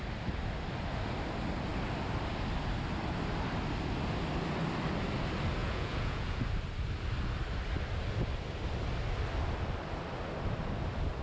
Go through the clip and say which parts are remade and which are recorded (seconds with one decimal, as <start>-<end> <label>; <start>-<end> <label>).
0.0-5.6 recorded; 5.6-6.4 remade; 6.4-11.2 recorded